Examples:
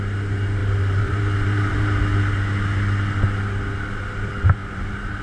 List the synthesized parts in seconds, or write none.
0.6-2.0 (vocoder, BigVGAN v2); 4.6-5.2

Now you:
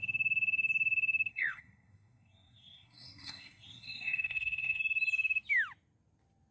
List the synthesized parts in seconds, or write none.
1.3-4.8 (codec, SNAC)

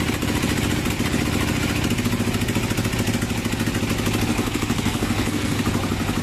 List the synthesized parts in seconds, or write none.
4.3-5.6 (codec, SNAC)